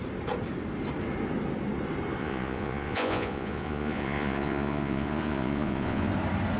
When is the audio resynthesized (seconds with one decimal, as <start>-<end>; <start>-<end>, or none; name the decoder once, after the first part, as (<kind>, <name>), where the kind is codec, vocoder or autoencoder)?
2.2-6.1 (vocoder, Vocos)